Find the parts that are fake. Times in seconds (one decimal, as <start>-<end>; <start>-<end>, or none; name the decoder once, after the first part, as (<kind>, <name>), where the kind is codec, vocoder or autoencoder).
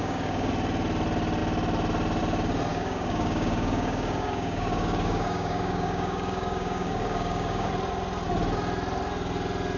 0.0-0.5 (codec, DAC); 2.7-7.7